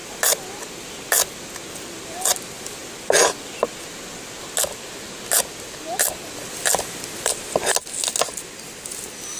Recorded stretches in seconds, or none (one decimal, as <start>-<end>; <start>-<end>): 0.0-9.4